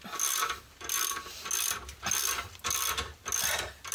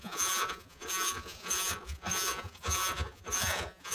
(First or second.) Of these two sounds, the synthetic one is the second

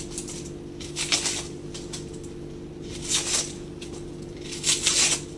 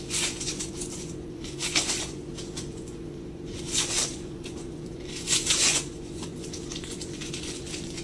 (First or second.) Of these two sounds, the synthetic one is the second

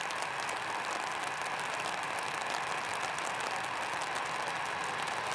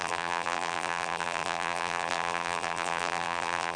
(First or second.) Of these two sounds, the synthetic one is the second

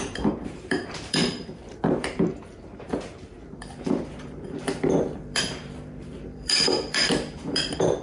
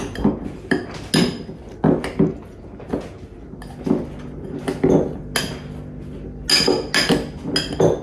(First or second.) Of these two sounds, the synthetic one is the first